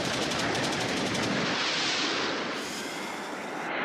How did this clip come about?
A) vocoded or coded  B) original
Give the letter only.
A